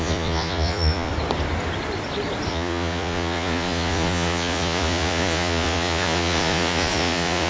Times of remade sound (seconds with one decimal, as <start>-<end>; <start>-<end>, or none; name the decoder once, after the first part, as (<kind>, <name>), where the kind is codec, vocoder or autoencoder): 0.0-1.1 (vocoder, Vocos); 2.5-7.5